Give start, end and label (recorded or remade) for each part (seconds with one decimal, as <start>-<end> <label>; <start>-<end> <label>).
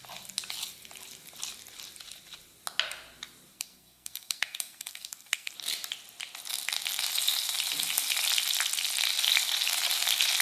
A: 0.0-3.5 recorded; 3.5-5.5 remade; 5.5-10.4 recorded